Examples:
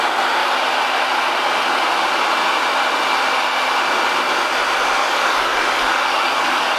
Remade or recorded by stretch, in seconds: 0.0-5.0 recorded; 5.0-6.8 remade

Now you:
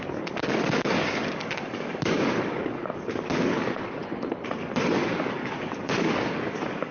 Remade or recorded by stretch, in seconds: 0.0-4.0 remade; 4.0-4.8 recorded; 4.8-6.9 remade

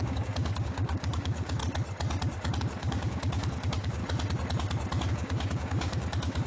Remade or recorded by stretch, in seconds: 0.0-1.6 remade; 1.6-2.6 recorded; 2.6-4.0 remade; 4.0-5.1 recorded; 5.1-6.5 remade

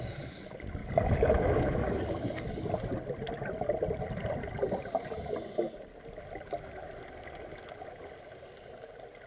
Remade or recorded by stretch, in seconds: 0.0-0.8 recorded; 0.8-2.6 remade; 2.6-9.3 recorded